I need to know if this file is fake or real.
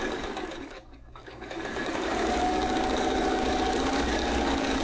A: fake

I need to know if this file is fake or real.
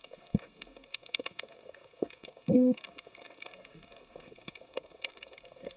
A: fake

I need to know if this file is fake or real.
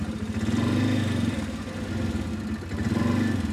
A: real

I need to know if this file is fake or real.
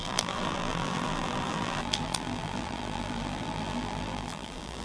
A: fake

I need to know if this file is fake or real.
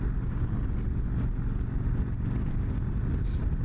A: real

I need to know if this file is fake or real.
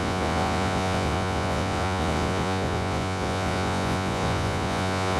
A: fake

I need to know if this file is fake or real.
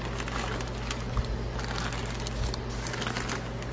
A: real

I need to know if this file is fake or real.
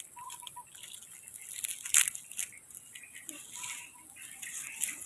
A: real